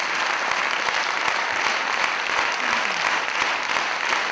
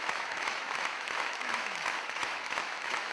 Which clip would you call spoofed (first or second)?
second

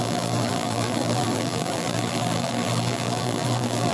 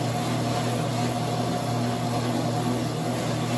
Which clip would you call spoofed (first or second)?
first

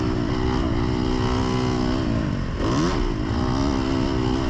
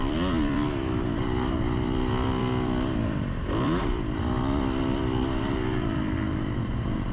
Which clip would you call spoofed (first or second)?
second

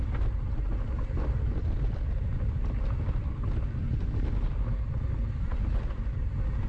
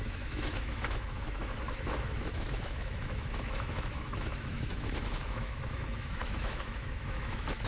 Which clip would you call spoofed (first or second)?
second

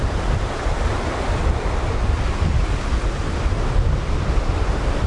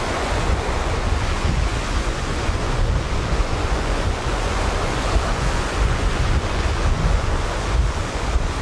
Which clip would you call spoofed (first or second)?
second